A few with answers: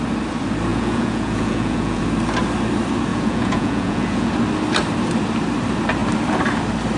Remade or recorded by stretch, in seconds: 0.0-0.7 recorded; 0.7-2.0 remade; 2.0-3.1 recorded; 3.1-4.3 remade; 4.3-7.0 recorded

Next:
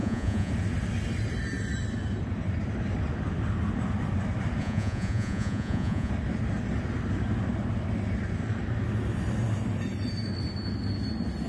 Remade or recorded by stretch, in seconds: 0.0-0.5 remade; 0.5-4.6 recorded; 4.6-6.1 remade; 6.1-11.5 recorded

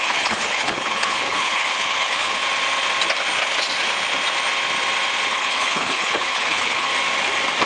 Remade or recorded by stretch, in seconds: 0.0-2.4 remade; 2.4-5.3 recorded; 5.3-6.9 remade; 6.9-7.7 recorded

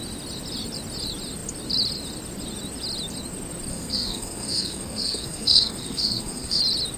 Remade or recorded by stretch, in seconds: 0.0-3.7 recorded; 3.7-6.6 remade; 6.6-7.0 recorded

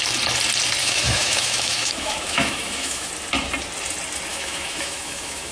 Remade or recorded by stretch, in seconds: 0.0-0.8 recorded; 0.8-3.1 remade; 3.1-4.3 recorded; 4.3-5.5 remade

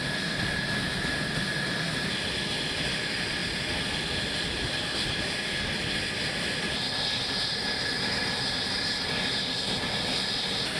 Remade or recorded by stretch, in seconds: 0.0-10.8 recorded

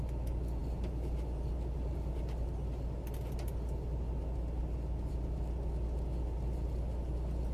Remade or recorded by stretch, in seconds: 0.0-7.5 recorded

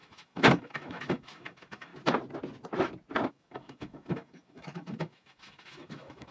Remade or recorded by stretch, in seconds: 0.0-1.9 remade; 1.9-3.3 recorded; 3.3-6.3 remade